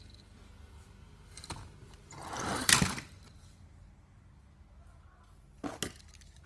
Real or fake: real